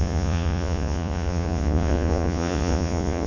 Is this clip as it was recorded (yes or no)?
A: no